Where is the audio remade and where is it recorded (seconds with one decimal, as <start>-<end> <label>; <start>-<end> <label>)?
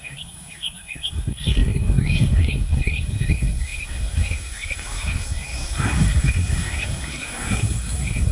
0.0-8.3 remade